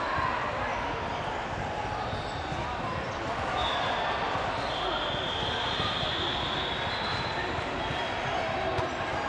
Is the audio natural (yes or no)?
yes